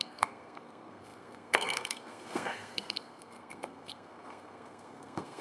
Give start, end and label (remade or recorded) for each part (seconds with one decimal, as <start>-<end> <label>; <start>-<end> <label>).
0.0-5.4 remade